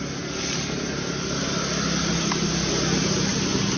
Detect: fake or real real